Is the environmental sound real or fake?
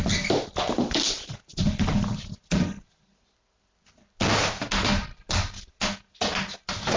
real